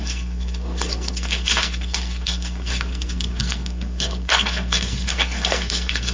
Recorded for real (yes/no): no